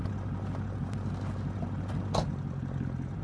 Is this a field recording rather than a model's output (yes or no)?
yes